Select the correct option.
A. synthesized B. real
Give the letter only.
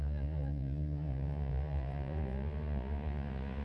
A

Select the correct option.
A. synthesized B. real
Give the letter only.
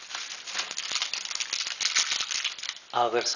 B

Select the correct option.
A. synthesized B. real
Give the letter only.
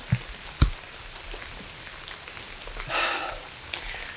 B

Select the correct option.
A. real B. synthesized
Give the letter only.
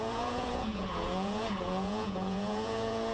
B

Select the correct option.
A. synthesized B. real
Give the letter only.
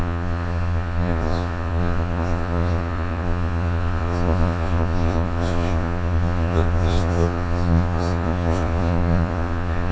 A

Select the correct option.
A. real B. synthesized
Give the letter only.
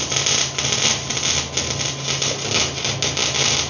A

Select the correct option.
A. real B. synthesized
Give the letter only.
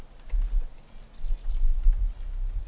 A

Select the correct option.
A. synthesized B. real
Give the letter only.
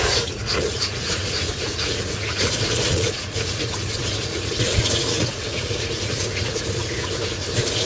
A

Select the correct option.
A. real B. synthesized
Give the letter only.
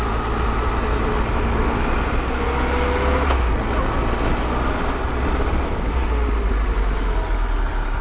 A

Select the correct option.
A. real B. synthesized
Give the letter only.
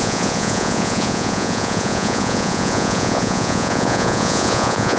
B